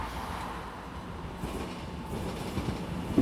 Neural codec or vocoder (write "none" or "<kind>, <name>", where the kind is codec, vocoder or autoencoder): none